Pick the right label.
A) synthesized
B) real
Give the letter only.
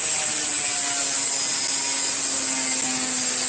B